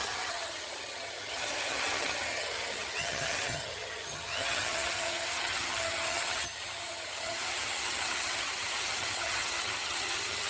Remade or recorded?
remade